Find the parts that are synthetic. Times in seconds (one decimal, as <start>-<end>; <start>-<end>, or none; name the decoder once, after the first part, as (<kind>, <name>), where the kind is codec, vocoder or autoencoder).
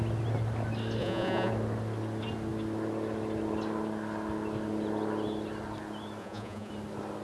1.0-1.5 (vocoder, Vocos); 6.2-6.7